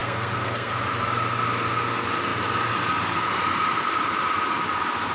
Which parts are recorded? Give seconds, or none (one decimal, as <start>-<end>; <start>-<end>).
0.7-5.1